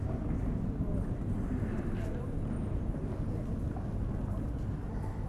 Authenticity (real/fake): real